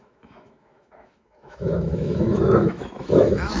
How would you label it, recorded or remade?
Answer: remade